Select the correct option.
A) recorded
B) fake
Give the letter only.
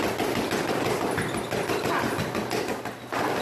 A